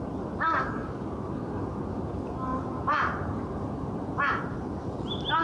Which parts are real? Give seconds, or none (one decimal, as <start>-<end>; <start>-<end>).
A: 0.0-0.8; 1.4-2.5; 4.4-5.4

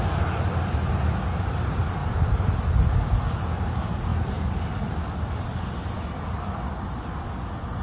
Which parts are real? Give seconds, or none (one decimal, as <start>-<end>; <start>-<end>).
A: 0.0-4.1; 7.0-7.8

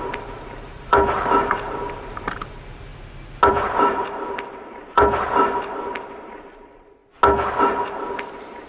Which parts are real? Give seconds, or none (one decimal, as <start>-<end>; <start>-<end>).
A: 2.9-3.5; 7.0-7.6

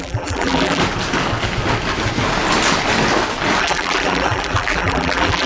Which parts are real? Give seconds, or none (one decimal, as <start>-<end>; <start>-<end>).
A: 0.8-3.6

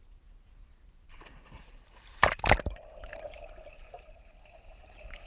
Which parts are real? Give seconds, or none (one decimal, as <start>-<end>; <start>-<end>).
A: 0.0-1.6; 3.5-5.3